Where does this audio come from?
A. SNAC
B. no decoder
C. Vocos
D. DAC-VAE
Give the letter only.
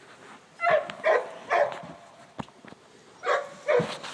B